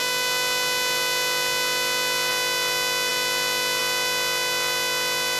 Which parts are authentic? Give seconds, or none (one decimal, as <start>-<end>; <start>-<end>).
0.0-5.4